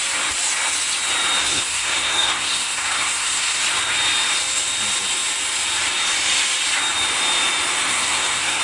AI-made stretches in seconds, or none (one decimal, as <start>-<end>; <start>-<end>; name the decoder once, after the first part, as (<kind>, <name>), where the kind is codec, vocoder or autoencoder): 1.4-3.6 (codec, SNAC); 7.9-8.6